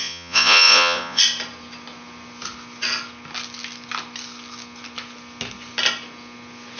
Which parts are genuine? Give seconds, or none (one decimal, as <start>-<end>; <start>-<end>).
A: 1.2-6.8